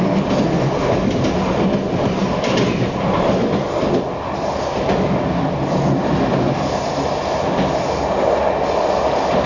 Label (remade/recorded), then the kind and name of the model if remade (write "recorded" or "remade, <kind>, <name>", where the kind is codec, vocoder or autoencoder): recorded